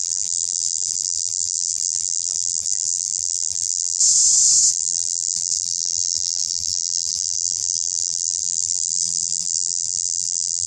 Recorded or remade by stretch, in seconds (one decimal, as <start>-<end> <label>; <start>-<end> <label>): 0.0-4.0 remade; 4.0-4.7 recorded; 4.7-10.7 remade